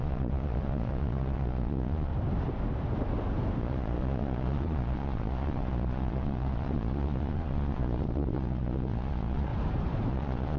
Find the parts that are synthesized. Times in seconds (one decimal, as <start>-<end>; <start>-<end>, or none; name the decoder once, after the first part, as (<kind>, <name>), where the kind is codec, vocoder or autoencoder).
0.0-2.1 (vocoder, Vocos); 3.6-9.5; 10.1-10.6